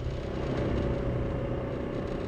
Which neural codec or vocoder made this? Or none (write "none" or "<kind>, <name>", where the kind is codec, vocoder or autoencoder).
none